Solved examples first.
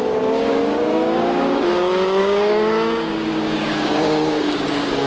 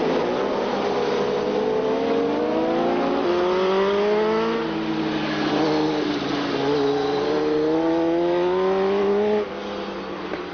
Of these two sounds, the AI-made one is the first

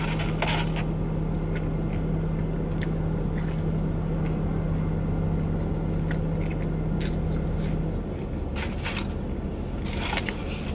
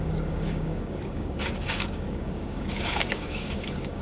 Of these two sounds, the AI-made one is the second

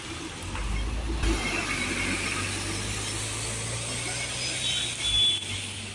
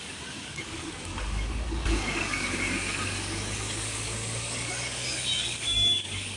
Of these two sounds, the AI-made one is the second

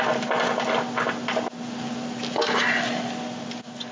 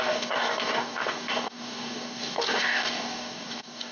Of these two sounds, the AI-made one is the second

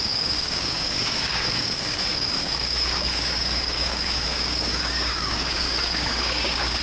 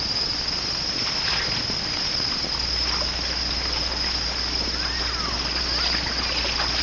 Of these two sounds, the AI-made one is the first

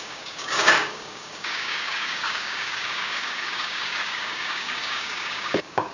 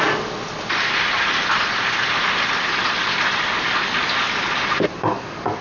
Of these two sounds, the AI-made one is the first